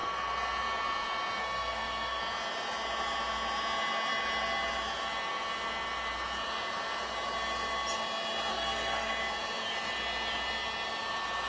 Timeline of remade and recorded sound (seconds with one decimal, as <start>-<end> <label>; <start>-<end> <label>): 0.0-1.4 recorded; 1.4-2.2 remade; 2.2-8.5 recorded; 8.5-9.1 remade; 9.1-11.5 recorded